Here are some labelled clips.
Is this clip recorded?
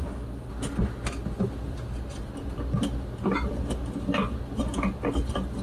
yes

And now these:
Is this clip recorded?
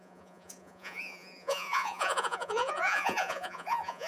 no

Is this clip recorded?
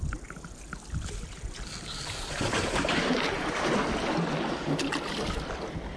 yes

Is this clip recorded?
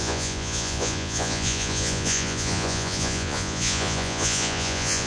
no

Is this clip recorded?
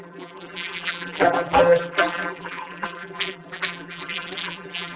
no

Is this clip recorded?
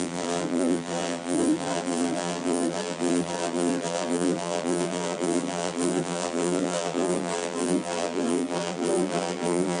no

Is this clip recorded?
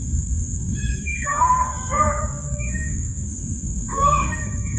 no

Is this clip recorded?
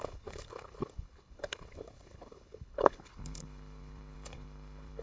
no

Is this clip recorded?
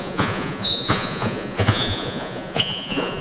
no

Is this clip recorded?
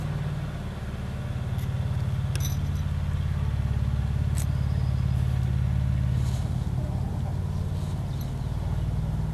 yes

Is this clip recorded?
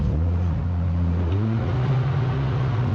no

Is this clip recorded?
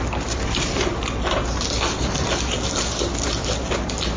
yes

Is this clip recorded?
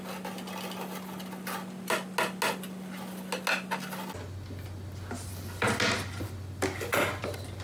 yes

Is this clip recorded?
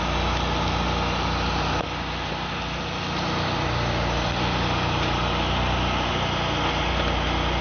yes